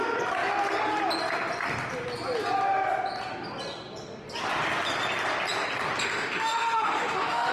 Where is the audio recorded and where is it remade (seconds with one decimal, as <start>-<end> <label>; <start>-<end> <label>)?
0.0-6.0 recorded; 6.0-7.5 remade